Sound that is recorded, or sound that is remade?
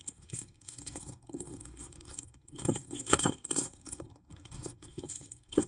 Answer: remade